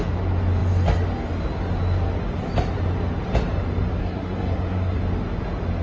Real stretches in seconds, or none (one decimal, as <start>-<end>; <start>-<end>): 0.0-4.0; 5.0-5.8